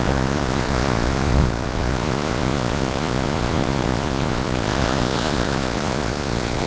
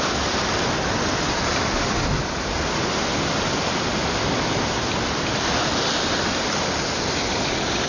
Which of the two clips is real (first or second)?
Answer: second